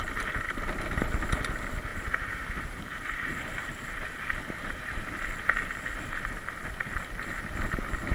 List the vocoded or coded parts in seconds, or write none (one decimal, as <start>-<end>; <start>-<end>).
1.9-5.1